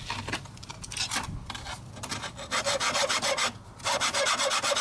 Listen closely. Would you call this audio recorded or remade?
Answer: recorded